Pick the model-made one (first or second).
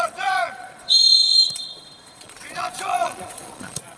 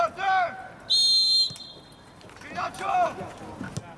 first